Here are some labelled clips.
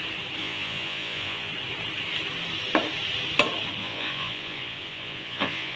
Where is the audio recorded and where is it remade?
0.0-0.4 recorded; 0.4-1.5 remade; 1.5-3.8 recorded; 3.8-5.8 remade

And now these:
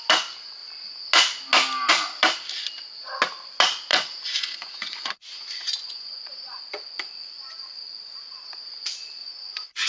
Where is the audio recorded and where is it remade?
0.0-3.9 recorded; 3.9-6.6 remade; 6.6-9.2 recorded; 9.2-9.9 remade

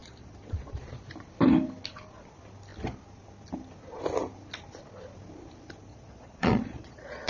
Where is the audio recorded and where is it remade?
0.0-0.8 remade; 0.8-5.9 recorded; 5.9-7.3 remade

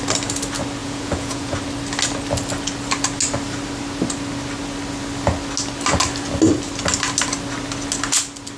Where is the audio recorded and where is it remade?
0.0-0.8 recorded; 0.8-1.6 remade; 1.6-8.6 recorded

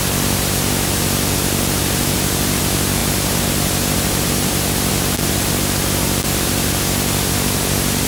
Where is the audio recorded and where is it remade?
0.0-8.1 remade

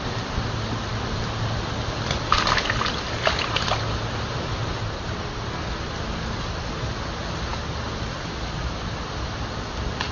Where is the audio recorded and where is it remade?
0.0-10.1 recorded

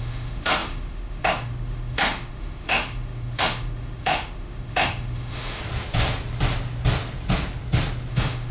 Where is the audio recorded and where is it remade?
0.0-5.6 remade; 5.6-8.1 recorded; 8.1-8.5 remade

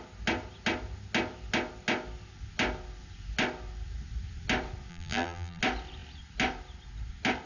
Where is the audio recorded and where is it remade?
0.0-4.9 recorded; 4.9-5.6 remade; 5.6-7.5 recorded